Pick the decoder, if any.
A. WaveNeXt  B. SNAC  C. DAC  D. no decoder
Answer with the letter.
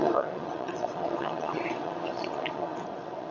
A